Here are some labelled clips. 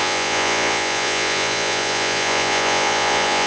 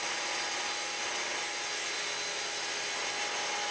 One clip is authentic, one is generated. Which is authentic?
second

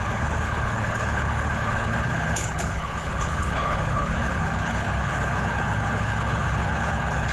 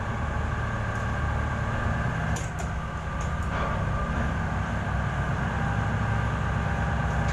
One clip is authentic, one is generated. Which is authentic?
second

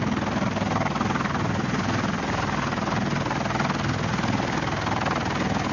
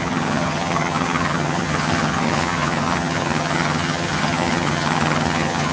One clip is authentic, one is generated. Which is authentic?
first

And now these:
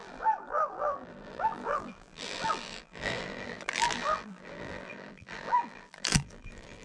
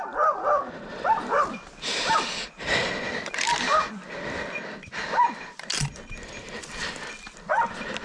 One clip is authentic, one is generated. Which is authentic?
second